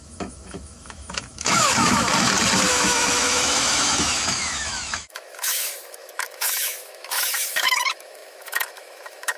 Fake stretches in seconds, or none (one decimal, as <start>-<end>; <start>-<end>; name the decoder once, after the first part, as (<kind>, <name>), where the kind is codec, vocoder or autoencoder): 0.0-2.1 (autoencoder, DAC-VAE); 2.7-9.4